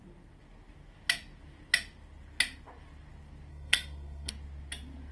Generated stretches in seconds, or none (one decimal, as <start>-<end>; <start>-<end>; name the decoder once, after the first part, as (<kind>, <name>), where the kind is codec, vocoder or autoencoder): 3.5-4.3 (codec, SNAC)